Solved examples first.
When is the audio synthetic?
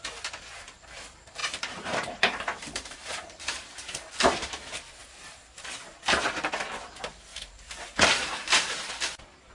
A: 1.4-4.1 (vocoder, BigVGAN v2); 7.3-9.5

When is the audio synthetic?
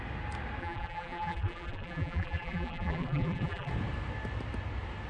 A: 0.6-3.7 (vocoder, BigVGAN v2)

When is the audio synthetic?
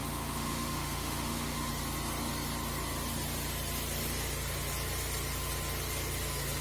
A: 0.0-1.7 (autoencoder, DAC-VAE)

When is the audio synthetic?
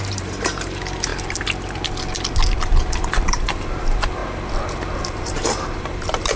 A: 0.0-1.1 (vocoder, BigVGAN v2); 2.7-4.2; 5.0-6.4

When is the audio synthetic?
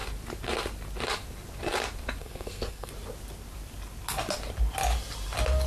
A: 2.2-2.9 (codec, SNAC)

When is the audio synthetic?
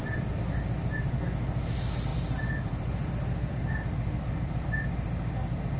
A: 2.1-5.3 (vocoder, BigVGAN v2)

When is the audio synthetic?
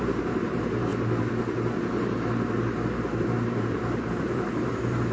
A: 0.0-0.9 (vocoder, BigVGAN v2); 3.2-5.1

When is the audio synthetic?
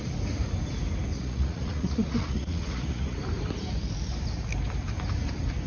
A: 1.1-3.2 (vocoder, Vocos)